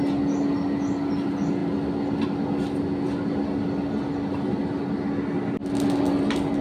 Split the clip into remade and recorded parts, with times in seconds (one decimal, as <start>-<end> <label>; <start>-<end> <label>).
0.0-6.6 recorded